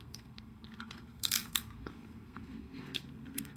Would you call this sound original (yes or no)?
no